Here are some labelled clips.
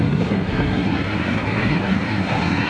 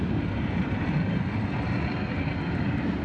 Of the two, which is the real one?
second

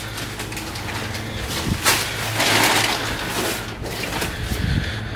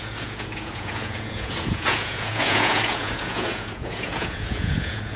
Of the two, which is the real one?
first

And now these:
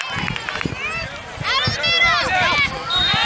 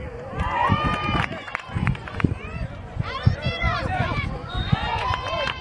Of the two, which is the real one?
first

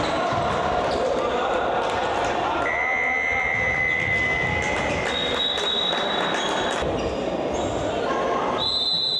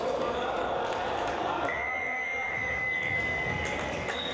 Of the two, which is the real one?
first